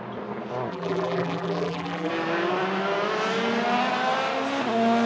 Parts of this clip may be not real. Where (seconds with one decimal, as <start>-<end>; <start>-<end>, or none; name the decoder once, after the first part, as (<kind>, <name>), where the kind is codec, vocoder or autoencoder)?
0.7-2.1 (vocoder, BigVGAN v2)